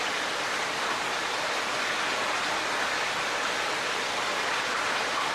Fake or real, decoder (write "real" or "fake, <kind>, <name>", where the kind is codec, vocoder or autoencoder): real